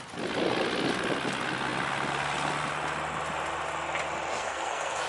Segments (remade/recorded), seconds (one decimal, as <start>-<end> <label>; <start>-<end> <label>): 0.0-4.3 recorded; 4.3-5.1 remade